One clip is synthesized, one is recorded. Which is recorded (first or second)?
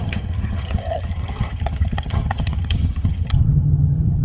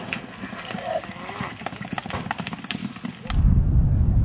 second